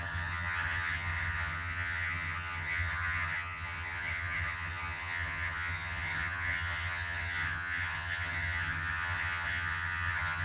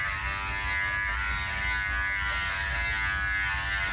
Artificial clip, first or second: first